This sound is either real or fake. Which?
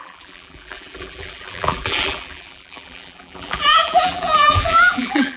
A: fake